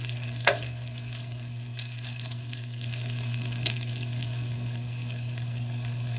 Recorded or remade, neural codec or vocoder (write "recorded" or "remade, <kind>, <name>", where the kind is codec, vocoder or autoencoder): remade, codec, SNAC